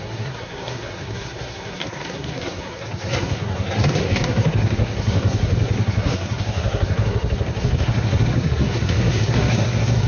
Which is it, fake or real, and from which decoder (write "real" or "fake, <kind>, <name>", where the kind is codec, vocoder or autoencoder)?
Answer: fake, codec, SNAC